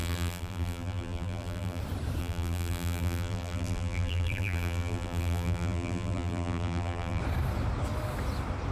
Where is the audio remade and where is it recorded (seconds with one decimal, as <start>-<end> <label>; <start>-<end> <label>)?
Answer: 0.0-1.8 remade; 1.8-2.2 recorded; 2.2-7.2 remade; 7.2-8.7 recorded